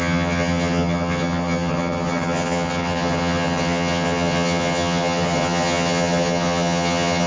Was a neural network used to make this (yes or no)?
yes